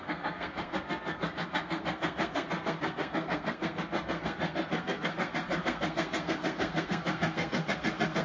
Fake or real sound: fake